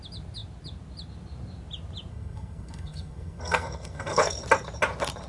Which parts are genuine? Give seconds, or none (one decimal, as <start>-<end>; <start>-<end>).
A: 0.0-2.1; 4.2-5.3